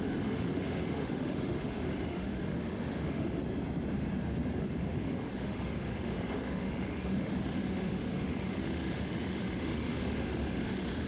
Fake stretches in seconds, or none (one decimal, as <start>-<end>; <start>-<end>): 0.0-3.4; 4.6-11.1